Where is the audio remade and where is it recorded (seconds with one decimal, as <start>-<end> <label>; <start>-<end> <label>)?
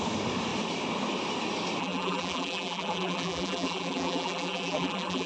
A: 0.0-1.8 recorded; 1.8-5.3 remade